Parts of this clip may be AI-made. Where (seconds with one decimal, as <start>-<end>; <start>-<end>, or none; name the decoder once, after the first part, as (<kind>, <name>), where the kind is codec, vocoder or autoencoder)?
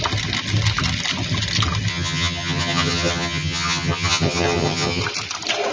1.9-5.0 (vocoder, HiFi-GAN)